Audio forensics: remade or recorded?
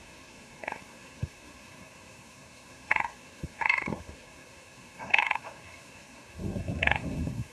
remade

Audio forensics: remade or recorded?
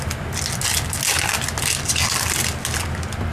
recorded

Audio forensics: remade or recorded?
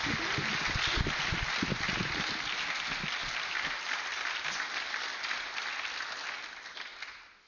recorded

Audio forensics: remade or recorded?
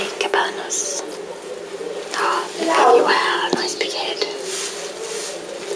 recorded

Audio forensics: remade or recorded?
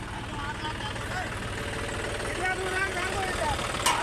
recorded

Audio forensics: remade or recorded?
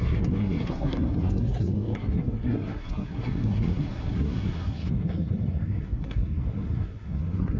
remade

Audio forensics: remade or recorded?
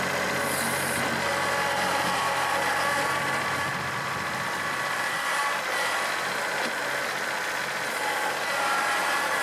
recorded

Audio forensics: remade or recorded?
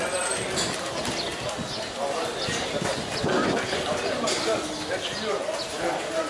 recorded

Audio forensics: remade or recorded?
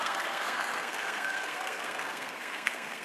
remade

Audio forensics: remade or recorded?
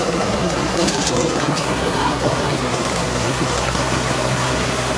remade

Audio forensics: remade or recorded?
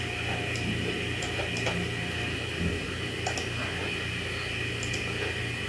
recorded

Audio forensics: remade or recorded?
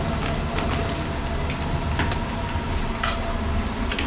recorded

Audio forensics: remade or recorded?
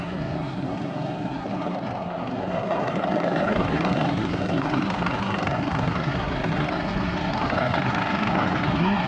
remade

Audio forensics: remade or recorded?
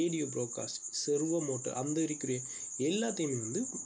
recorded